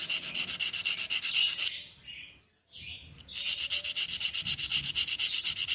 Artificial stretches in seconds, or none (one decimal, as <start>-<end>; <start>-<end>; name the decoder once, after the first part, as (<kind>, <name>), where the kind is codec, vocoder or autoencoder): none